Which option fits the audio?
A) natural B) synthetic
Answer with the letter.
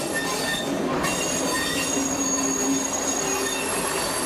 A